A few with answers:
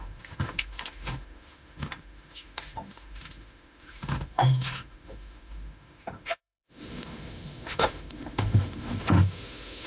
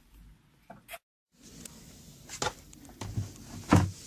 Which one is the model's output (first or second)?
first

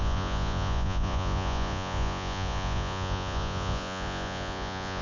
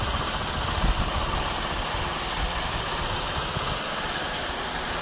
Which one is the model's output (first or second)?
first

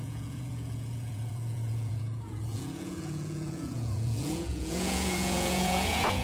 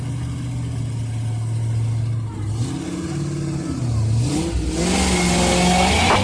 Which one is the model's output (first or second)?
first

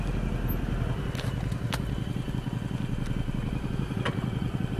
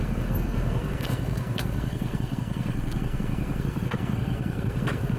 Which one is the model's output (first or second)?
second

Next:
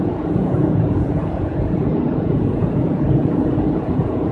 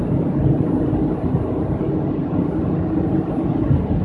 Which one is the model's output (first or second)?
first